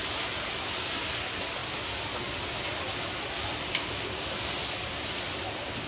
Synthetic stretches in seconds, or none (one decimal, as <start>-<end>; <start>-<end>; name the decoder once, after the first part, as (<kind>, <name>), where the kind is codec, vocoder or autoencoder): none